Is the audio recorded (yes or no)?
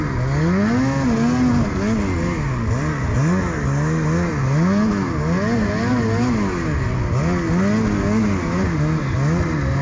yes